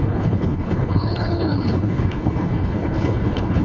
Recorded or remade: remade